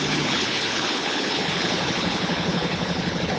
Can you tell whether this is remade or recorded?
remade